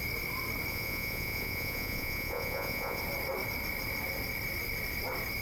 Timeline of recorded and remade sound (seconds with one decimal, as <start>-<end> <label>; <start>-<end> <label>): 0.0-0.7 recorded; 0.7-3.0 remade; 3.0-5.4 recorded